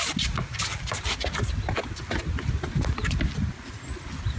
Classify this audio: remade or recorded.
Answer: recorded